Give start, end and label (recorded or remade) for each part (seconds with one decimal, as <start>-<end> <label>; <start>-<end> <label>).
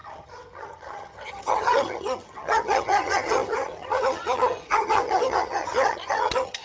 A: 0.0-6.6 remade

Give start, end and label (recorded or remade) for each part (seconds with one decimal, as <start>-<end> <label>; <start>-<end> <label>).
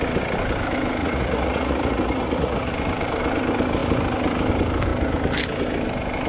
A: 0.0-1.0 recorded; 1.0-2.7 remade; 2.7-6.3 recorded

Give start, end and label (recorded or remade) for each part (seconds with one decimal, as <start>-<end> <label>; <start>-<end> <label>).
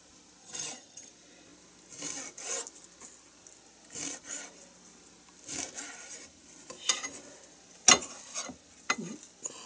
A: 0.0-0.4 recorded; 0.4-1.1 remade; 1.1-9.7 recorded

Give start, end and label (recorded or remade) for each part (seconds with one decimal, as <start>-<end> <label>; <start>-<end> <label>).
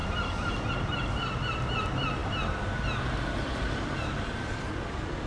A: 0.0-5.3 recorded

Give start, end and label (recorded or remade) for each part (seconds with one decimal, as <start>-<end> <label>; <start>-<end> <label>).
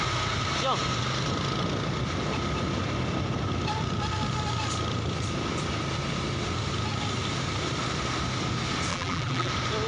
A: 0.0-8.9 recorded; 8.9-9.5 remade; 9.5-9.9 recorded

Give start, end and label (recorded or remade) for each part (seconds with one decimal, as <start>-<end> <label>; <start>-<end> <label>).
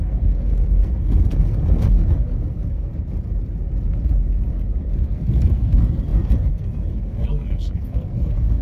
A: 0.0-2.9 remade; 2.9-4.5 recorded; 4.5-8.6 remade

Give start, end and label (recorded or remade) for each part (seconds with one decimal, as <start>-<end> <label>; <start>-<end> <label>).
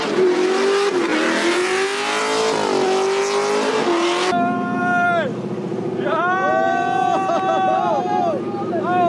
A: 0.0-9.1 recorded